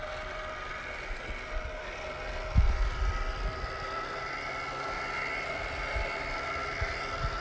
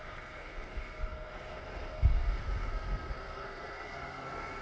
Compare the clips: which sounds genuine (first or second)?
first